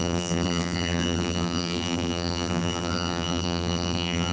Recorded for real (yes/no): no